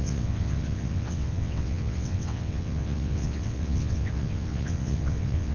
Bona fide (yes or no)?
no